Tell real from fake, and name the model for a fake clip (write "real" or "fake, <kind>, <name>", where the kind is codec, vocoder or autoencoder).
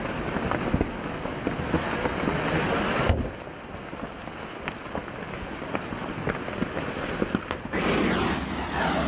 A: real